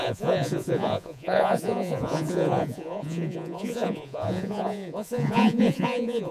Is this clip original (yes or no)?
no